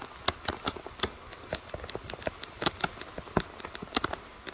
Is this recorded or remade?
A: recorded